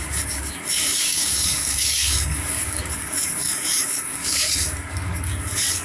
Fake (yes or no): yes